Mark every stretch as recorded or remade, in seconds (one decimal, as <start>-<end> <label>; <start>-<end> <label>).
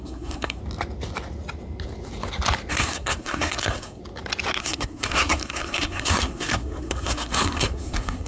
0.0-0.6 remade; 0.6-2.7 recorded; 2.7-4.0 remade; 4.0-4.6 recorded; 4.6-8.3 remade